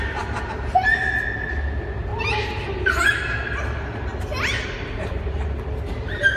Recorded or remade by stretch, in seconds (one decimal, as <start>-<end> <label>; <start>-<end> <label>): 0.0-4.1 recorded; 4.1-5.3 remade; 5.3-6.4 recorded